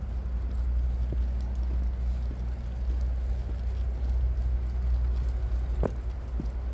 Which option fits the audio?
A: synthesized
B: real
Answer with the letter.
B